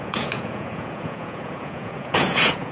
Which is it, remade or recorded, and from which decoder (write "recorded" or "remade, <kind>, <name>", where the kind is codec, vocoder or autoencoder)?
remade, vocoder, Vocos